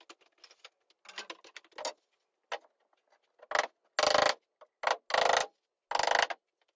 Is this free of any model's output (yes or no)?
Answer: yes